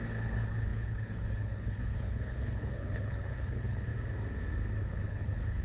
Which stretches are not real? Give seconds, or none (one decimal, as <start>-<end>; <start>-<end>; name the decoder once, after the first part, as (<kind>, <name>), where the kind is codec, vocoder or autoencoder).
0.0-3.9 (codec, HILCodec); 4.8-5.6